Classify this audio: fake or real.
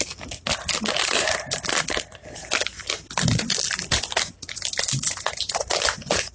real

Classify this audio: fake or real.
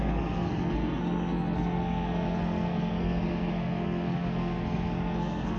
fake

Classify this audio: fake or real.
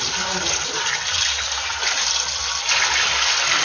real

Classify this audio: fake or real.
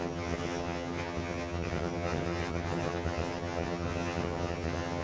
fake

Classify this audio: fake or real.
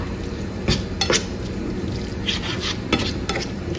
real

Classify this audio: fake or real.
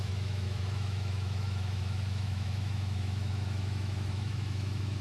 fake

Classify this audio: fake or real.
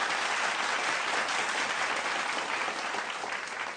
real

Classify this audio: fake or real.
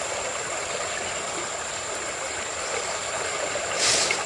real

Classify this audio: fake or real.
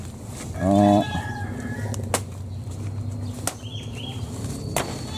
real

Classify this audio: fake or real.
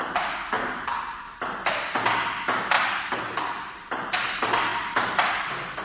real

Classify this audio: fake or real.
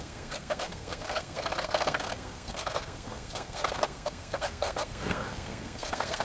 fake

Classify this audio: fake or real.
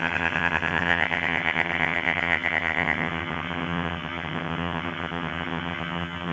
fake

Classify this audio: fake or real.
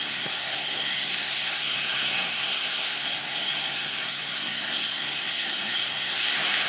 fake